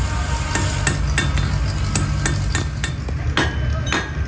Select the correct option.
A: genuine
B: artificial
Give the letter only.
A